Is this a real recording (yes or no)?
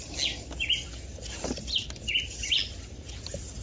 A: yes